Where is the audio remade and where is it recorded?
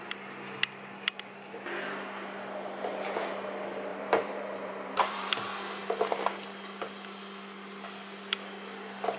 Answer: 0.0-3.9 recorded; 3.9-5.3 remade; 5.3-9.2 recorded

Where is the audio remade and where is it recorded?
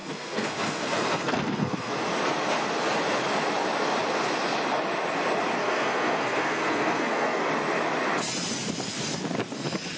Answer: 0.0-1.9 remade; 1.9-5.6 recorded; 5.6-7.5 remade; 7.5-10.0 recorded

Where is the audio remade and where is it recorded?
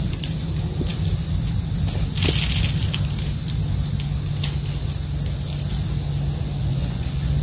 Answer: 0.0-6.6 recorded; 6.6-7.4 remade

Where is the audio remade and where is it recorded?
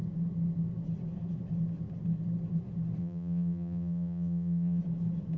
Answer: 0.0-3.0 recorded; 3.0-4.8 remade; 4.8-5.4 recorded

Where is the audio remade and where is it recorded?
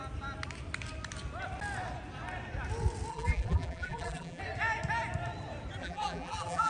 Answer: 0.0-3.1 recorded; 3.1-4.4 remade; 4.4-5.8 recorded; 5.8-6.7 remade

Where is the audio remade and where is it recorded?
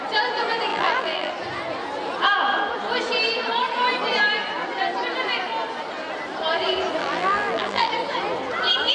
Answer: 0.0-0.7 recorded; 0.7-1.3 remade; 1.3-7.0 recorded; 7.0-7.9 remade; 7.9-8.9 recorded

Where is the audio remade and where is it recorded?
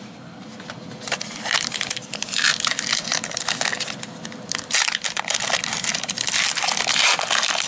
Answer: 0.0-7.7 recorded